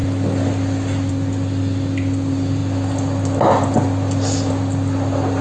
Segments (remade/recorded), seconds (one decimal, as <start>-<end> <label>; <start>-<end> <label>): 0.0-5.4 recorded